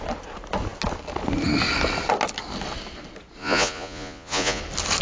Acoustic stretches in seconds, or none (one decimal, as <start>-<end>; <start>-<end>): 0.0-3.4; 4.6-5.0